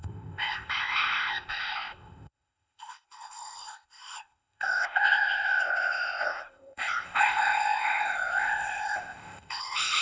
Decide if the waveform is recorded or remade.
remade